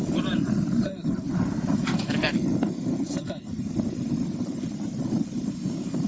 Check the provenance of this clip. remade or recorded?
remade